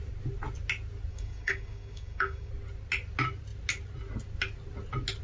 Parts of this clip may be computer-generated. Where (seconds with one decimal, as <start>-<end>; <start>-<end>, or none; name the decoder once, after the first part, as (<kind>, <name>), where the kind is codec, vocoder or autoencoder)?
1.1-2.5 (codec, DAC)